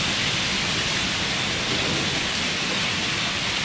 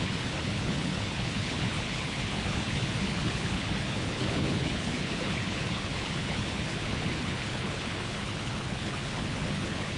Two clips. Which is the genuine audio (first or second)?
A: first